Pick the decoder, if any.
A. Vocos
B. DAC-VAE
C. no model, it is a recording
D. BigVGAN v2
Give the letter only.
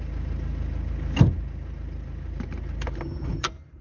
C